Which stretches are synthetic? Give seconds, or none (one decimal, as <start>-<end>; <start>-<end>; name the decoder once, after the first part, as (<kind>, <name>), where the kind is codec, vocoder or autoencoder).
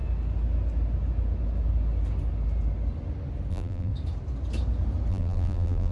3.5-3.9 (vocoder, BigVGAN v2); 5.1-5.9